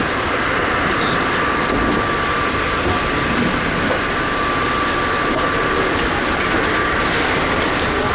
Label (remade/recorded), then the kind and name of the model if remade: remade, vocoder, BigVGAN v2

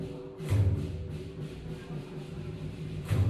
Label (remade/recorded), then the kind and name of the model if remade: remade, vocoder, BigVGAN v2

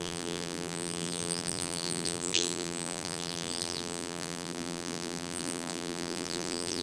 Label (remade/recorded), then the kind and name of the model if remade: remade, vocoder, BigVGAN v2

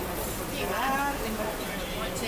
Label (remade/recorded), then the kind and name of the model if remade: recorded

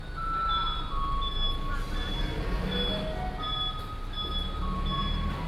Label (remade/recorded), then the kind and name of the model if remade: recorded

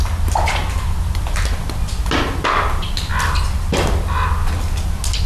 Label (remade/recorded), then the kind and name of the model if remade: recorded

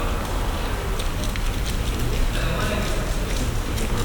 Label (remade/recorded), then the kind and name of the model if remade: recorded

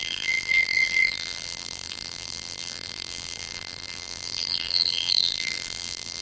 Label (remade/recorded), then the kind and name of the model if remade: remade, vocoder, BigVGAN v2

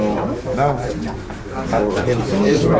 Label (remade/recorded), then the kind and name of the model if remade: recorded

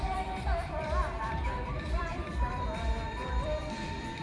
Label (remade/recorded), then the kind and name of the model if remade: remade, vocoder, BigVGAN v2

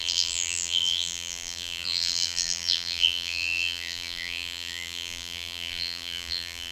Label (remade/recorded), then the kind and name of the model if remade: remade, vocoder, BigVGAN v2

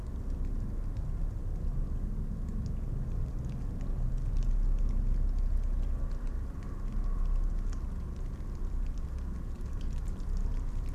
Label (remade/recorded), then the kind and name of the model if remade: recorded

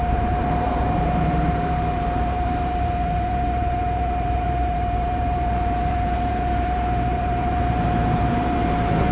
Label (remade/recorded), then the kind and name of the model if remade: remade, vocoder, BigVGAN v2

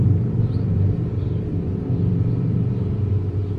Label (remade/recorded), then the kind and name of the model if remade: remade, vocoder, BigVGAN v2